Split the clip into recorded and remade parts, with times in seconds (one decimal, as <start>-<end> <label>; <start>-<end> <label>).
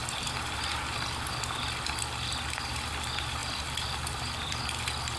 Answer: 0.0-5.2 recorded